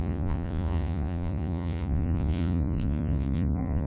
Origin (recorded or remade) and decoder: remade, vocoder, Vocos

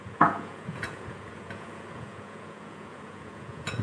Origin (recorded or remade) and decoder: remade, vocoder, Vocos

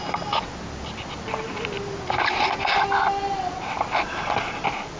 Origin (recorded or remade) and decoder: recorded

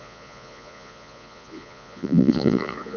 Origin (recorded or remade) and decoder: remade, vocoder, Vocos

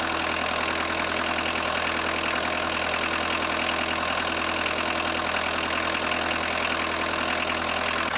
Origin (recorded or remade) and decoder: recorded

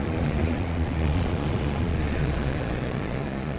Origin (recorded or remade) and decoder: remade, vocoder, Vocos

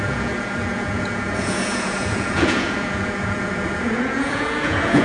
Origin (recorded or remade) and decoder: remade, vocoder, Vocos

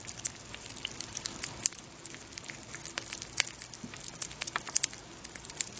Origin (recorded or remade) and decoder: recorded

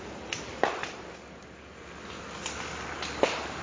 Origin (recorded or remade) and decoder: recorded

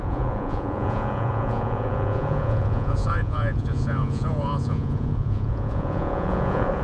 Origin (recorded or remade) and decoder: remade, vocoder, Vocos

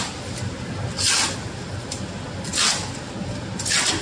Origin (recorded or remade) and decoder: recorded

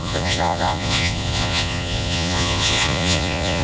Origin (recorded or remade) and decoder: remade, vocoder, Vocos